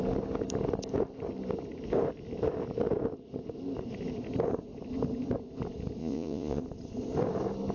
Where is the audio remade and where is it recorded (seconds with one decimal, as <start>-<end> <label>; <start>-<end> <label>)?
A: 0.0-6.0 recorded; 6.0-6.6 remade; 6.6-7.7 recorded